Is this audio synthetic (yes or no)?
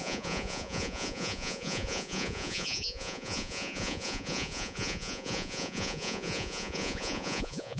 yes